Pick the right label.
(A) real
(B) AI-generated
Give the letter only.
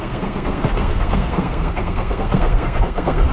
B